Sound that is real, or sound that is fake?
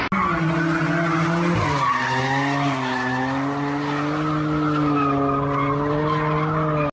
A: real